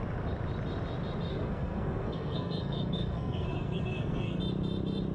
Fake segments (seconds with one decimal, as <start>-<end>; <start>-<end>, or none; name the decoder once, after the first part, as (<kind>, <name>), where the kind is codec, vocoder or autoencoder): 1.3-4.4 (codec, SNAC)